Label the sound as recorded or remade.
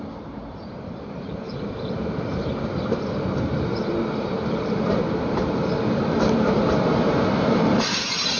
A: remade